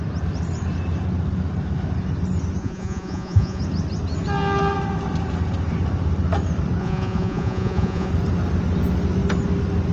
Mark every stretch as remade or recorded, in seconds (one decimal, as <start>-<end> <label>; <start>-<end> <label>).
0.0-2.6 recorded; 2.6-3.6 remade; 3.6-6.8 recorded; 6.8-8.1 remade; 8.1-9.9 recorded